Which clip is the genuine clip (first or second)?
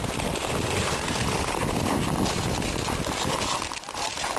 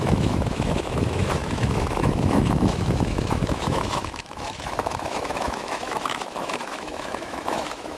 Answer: first